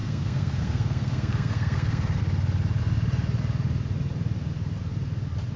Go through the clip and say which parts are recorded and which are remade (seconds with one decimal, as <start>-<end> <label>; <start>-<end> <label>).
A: 0.0-2.2 remade; 2.2-5.6 recorded